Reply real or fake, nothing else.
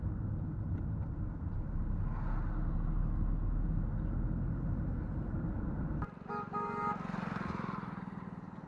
real